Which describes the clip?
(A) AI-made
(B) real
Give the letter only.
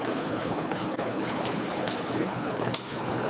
A